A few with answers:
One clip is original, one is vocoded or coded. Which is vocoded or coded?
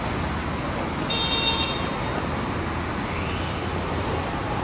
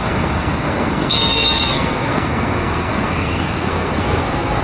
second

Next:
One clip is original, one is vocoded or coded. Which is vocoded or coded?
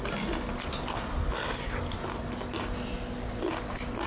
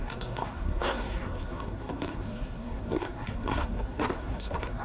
second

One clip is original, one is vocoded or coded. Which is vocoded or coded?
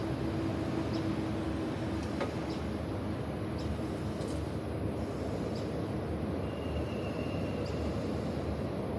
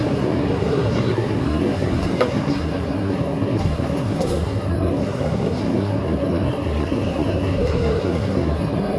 second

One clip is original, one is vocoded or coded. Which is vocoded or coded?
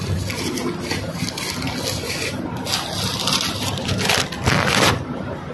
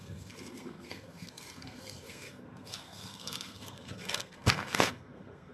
second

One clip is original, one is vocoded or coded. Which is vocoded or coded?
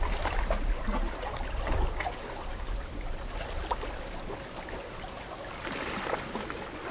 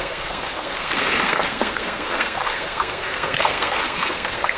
second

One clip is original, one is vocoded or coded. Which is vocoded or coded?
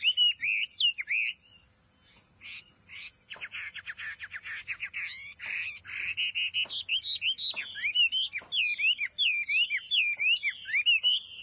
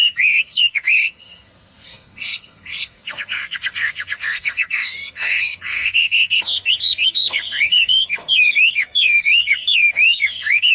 second